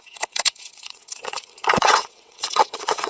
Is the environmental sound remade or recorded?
remade